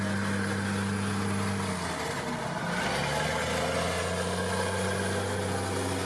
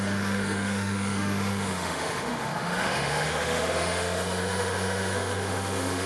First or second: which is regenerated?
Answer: second